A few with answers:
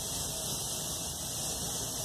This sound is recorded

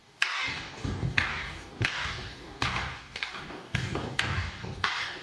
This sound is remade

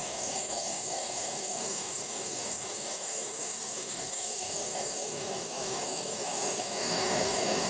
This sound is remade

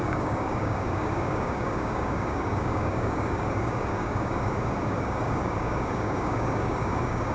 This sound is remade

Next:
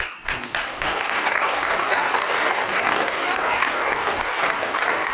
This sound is remade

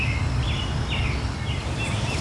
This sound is recorded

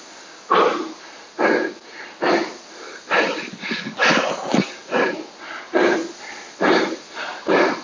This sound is recorded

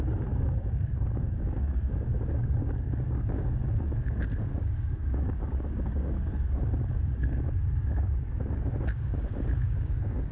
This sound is remade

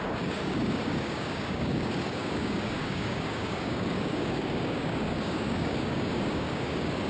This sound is remade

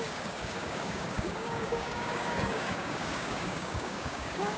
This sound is remade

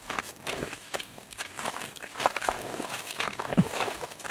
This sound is remade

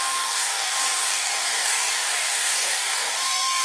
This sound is remade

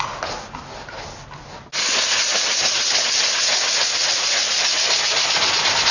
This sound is recorded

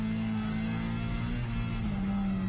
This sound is recorded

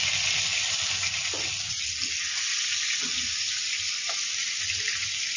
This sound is recorded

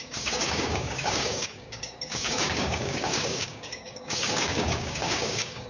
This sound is remade